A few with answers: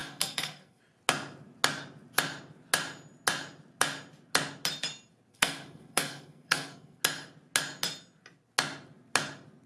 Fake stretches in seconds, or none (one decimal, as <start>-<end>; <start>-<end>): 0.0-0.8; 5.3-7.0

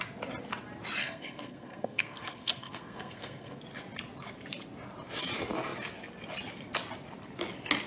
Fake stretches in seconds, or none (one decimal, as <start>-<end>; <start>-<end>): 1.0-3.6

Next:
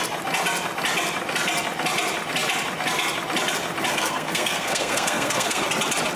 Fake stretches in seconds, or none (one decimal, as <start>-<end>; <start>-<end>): 3.9-5.6

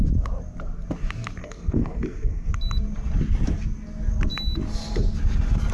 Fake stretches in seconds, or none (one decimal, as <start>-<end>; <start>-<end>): 1.4-2.5

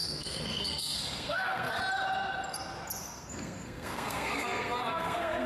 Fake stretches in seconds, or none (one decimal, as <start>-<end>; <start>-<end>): 0.0-1.8; 3.0-5.5

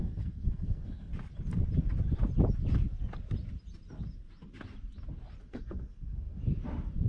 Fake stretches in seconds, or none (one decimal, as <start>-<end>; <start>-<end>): 0.0-1.1; 5.4-6.4

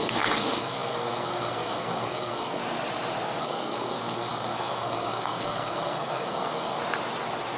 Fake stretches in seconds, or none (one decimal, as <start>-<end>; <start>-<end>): 0.0-2.6; 3.4-6.8